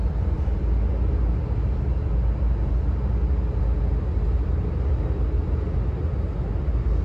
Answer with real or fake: real